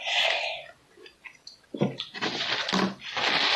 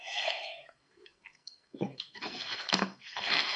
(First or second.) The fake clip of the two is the second